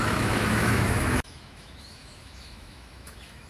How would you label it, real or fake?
fake